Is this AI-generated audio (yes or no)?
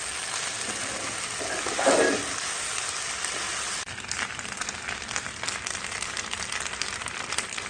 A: no